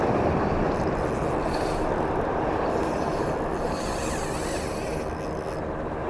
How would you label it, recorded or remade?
recorded